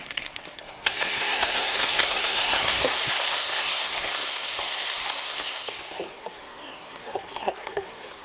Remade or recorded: remade